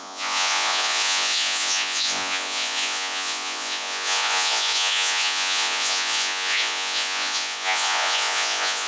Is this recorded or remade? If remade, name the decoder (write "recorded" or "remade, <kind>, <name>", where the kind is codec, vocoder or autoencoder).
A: remade, vocoder, Vocos